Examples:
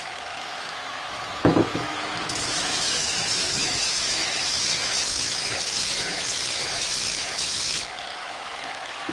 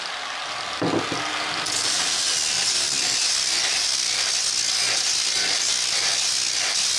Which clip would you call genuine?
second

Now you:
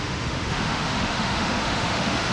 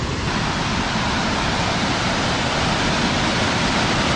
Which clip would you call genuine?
second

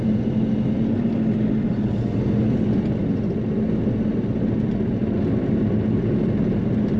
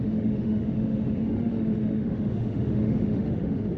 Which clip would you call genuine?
first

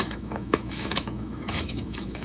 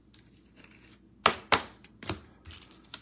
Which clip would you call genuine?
second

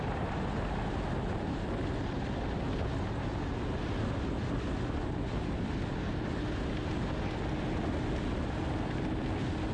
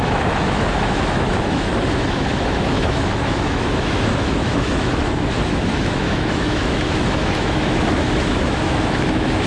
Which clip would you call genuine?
first